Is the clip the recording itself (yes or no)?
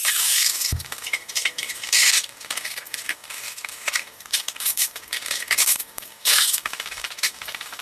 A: no